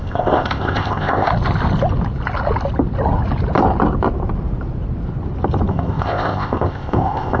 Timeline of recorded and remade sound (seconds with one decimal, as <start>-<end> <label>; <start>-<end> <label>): 0.0-1.3 remade; 1.3-5.7 recorded; 5.7-7.4 remade